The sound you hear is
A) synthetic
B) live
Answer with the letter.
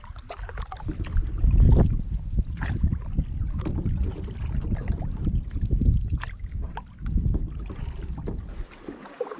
B